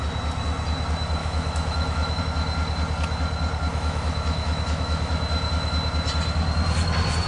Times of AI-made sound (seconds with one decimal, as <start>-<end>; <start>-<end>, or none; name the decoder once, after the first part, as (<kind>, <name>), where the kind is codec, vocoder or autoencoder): 1.2-2.2 (autoencoder, DAC-VAE); 3.7-5.1